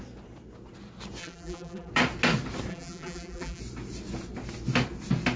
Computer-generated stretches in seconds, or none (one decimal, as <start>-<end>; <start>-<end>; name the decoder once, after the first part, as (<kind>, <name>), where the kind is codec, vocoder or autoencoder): 1.2-1.9 (vocoder, BigVGAN v2); 2.7-3.6